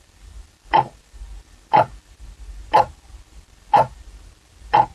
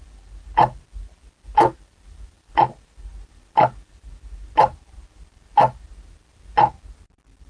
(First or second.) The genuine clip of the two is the second